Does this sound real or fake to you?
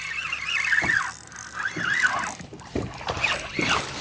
real